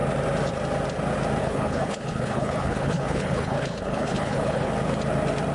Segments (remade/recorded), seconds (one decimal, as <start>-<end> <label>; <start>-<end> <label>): 0.0-1.4 recorded; 1.4-4.7 remade; 4.7-5.5 recorded